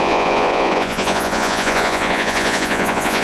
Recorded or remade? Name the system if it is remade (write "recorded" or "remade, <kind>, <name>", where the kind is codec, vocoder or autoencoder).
remade, vocoder, Vocos